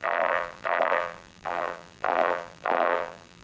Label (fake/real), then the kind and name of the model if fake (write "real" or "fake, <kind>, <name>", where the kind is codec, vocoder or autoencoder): fake, vocoder, BigVGAN v2